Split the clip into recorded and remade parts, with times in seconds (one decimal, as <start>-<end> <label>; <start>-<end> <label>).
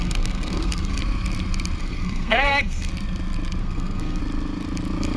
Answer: 0.0-1.0 remade; 1.0-1.8 recorded; 1.8-2.9 remade; 2.9-3.6 recorded; 3.6-4.2 remade; 4.2-5.2 recorded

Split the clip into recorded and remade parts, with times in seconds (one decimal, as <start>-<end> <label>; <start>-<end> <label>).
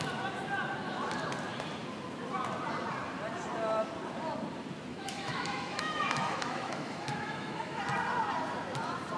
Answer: 0.0-4.9 recorded; 4.9-7.8 remade; 7.8-9.2 recorded